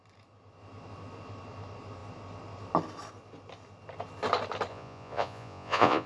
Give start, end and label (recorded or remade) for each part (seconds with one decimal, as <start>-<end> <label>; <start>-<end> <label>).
0.0-4.7 recorded; 4.7-6.1 remade

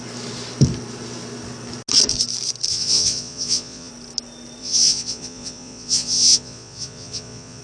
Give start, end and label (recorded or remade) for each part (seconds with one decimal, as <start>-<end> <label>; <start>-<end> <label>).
0.0-2.7 recorded; 2.7-3.9 remade; 3.9-4.6 recorded; 4.6-7.6 remade